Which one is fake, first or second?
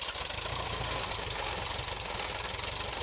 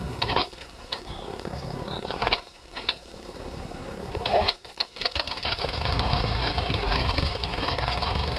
second